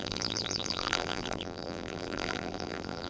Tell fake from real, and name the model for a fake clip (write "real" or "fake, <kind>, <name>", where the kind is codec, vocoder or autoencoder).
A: fake, vocoder, BigVGAN v2